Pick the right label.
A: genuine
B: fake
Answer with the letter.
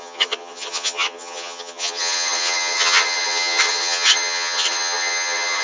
B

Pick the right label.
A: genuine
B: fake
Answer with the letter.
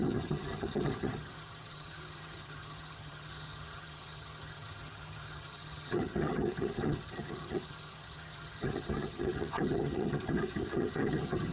B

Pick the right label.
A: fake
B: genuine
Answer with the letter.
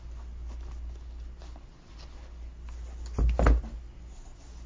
B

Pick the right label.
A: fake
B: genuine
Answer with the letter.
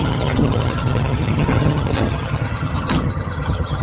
A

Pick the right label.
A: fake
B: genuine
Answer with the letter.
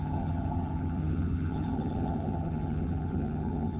A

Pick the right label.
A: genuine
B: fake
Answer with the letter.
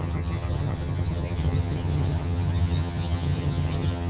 B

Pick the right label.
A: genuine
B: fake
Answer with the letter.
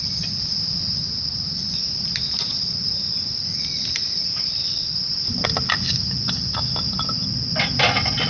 A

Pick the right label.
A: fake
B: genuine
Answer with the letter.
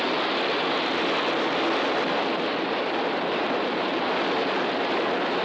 B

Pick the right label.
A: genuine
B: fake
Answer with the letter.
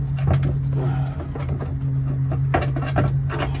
A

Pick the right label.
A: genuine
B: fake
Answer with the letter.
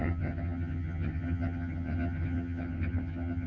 B